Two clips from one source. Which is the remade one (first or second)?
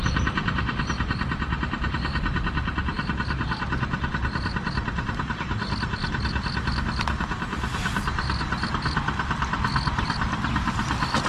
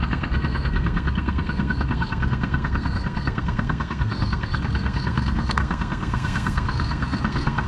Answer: second